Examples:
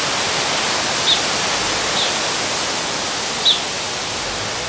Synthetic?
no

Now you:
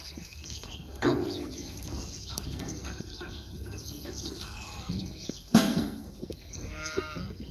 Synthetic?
yes